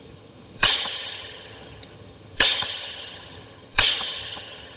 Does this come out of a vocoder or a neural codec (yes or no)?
yes